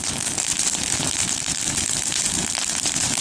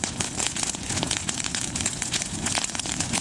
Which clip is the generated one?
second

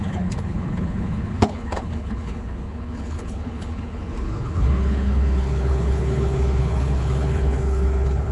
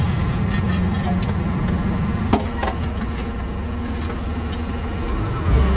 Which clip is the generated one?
first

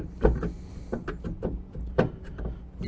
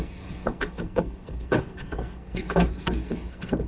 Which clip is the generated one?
second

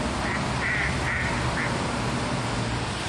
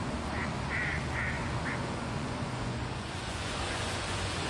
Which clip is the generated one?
second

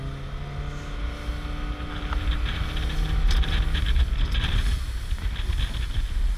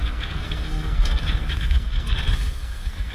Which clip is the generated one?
second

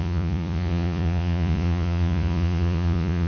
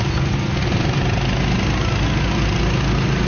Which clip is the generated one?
first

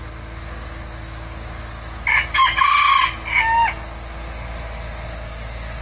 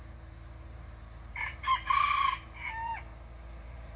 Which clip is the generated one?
second